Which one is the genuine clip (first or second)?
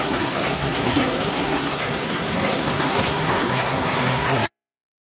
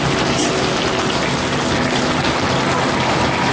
second